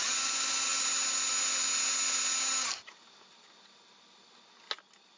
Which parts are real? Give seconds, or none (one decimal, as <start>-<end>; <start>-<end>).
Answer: 0.0-5.2